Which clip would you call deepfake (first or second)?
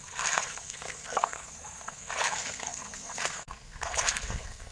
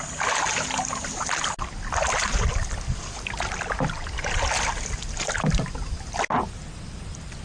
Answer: first